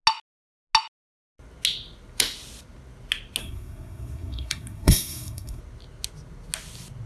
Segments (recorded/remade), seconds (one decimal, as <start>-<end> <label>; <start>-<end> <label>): 0.0-3.4 recorded; 3.4-5.6 remade; 5.6-7.1 recorded